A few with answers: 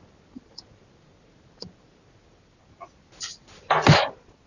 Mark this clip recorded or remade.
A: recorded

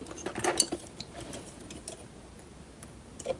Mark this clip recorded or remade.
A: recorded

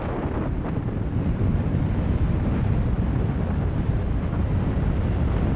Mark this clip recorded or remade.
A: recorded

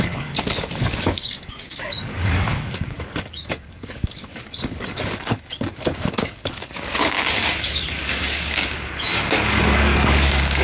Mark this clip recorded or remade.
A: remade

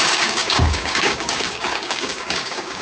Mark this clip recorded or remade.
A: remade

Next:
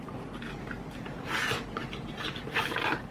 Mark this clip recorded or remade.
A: recorded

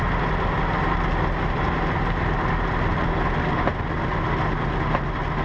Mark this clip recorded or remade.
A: recorded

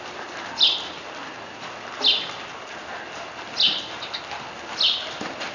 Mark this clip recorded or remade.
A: recorded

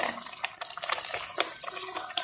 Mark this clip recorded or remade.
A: recorded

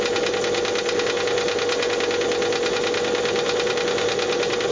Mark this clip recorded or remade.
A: recorded